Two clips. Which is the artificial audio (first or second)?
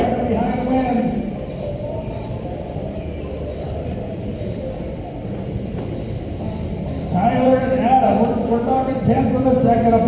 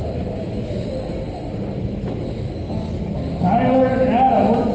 first